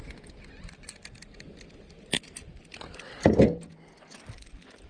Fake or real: real